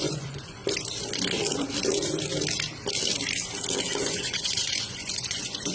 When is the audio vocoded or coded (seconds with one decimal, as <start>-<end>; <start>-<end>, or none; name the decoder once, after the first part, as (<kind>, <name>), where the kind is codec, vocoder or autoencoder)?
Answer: 0.0-0.6 (vocoder, Vocos); 4.0-5.7